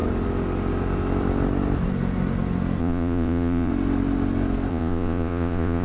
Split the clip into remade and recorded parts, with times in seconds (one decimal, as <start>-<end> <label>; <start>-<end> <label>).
0.0-2.8 recorded; 2.8-3.7 remade; 3.7-4.7 recorded; 4.7-5.8 remade